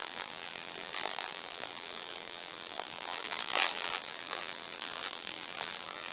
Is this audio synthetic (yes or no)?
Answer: yes